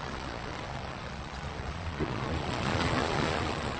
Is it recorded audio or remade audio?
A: remade